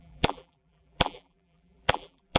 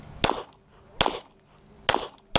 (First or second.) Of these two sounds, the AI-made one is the first